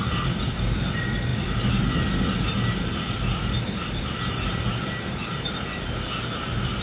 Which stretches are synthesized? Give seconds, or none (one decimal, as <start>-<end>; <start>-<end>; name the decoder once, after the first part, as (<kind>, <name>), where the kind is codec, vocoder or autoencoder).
none